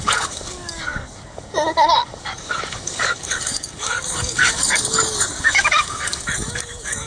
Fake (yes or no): yes